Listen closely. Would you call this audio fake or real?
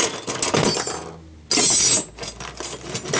real